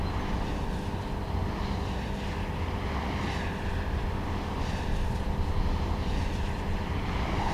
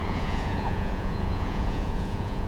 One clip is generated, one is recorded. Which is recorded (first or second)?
first